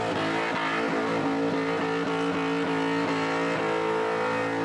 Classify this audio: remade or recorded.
recorded